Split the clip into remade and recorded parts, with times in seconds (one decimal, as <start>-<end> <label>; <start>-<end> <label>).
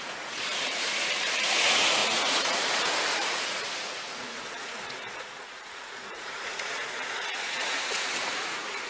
0.0-8.9 remade